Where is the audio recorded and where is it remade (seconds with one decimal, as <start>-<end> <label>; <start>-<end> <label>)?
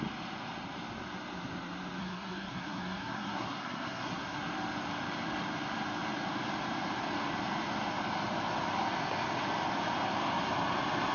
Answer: 0.0-2.0 recorded; 2.0-4.4 remade; 4.4-11.1 recorded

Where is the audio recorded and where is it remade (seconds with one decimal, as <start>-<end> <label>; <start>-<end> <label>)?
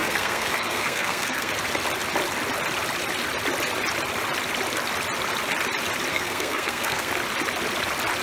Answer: 0.0-1.5 remade; 1.5-6.1 recorded; 6.1-7.1 remade; 7.1-8.2 recorded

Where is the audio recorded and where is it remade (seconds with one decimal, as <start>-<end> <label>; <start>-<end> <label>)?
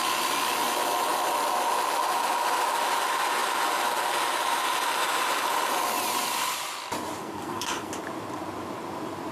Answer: 0.0-7.2 recorded; 7.2-7.9 remade; 7.9-9.3 recorded